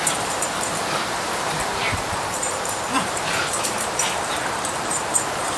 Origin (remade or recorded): remade